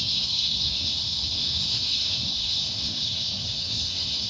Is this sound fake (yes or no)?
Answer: yes